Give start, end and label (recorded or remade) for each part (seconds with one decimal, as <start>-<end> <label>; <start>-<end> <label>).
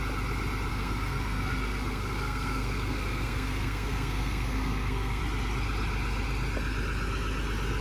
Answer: 0.0-0.7 recorded; 0.7-5.2 remade; 5.2-7.8 recorded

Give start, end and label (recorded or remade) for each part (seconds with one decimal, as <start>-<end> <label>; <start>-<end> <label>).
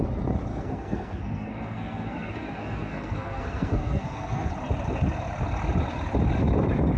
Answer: 0.0-0.5 recorded; 0.5-4.5 remade; 4.5-7.0 recorded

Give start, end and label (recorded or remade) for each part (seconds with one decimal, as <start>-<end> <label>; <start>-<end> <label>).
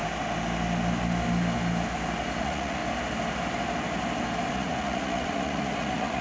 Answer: 0.0-2.4 recorded; 2.4-2.8 remade; 2.8-4.5 recorded; 4.5-6.2 remade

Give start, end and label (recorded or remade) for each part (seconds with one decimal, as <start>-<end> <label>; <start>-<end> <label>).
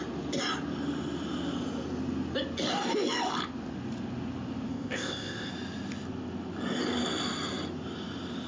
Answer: 0.0-4.7 recorded; 4.7-5.5 remade; 5.5-8.5 recorded